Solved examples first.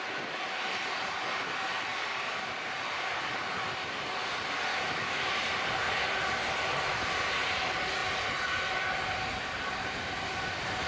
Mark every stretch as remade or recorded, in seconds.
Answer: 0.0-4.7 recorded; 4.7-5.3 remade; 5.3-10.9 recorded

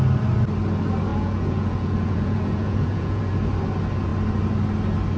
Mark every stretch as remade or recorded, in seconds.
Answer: 0.0-1.1 recorded; 1.1-3.2 remade; 3.2-5.2 recorded

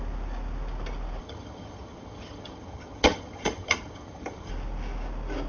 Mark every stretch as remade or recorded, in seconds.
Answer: 0.0-1.2 recorded; 1.2-4.5 remade; 4.5-5.5 recorded